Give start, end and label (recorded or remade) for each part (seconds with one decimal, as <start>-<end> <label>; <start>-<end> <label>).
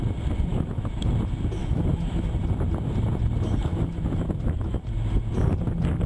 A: 0.0-0.5 recorded; 0.5-1.1 remade; 1.1-1.6 recorded; 1.6-2.3 remade; 2.3-3.7 recorded; 3.7-4.8 remade; 4.8-6.1 recorded